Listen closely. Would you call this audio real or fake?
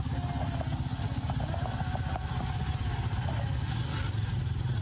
real